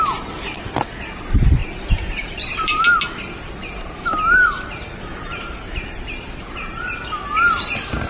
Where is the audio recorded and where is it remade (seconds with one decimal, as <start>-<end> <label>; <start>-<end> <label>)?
0.0-1.6 recorded; 1.6-2.8 remade; 2.8-3.6 recorded; 3.6-7.0 remade; 7.0-8.1 recorded